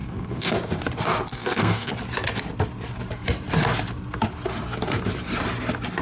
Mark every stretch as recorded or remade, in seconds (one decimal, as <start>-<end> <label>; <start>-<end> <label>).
0.0-0.5 remade; 0.5-1.3 recorded; 1.3-1.9 remade; 1.9-6.0 recorded